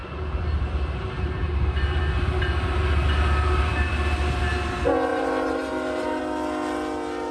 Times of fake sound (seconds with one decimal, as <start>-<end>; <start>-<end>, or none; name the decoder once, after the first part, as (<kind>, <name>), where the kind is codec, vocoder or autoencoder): 0.0-2.0 (vocoder, BigVGAN v2); 5.1-6.2